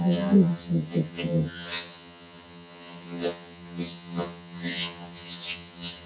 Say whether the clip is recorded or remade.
remade